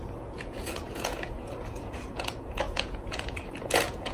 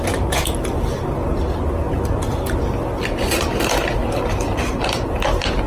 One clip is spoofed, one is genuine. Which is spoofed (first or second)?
first